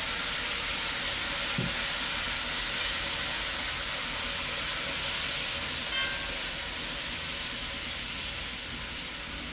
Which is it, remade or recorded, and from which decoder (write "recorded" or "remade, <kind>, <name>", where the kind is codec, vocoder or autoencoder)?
recorded